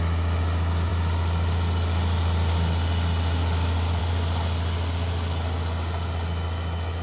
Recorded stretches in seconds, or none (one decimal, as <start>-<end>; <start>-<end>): 0.0-7.0